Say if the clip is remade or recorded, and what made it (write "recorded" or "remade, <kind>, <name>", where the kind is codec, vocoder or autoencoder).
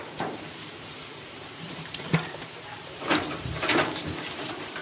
remade, vocoder, BigVGAN v2